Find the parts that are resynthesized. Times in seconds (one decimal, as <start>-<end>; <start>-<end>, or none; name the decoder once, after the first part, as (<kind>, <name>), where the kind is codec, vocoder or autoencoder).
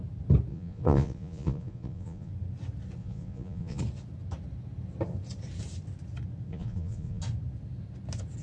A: 0.5-2.3 (vocoder, Vocos); 3.0-3.8; 6.5-7.2